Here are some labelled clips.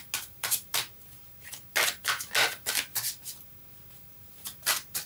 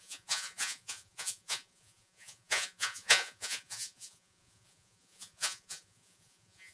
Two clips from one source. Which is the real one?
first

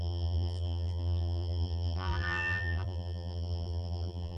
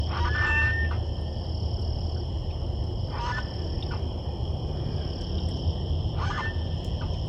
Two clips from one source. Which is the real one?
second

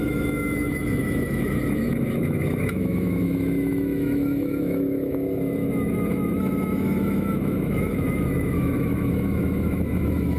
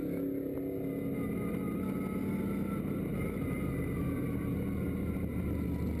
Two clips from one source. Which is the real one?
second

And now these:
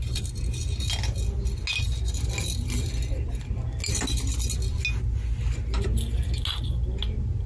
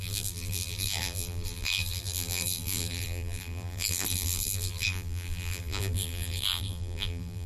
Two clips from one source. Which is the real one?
first